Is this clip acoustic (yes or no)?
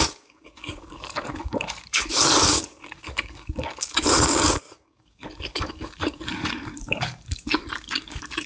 no